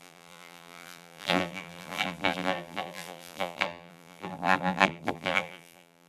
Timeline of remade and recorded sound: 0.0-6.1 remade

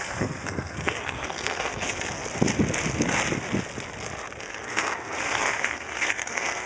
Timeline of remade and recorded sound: 0.0-2.2 remade; 2.2-4.4 recorded; 4.4-6.7 remade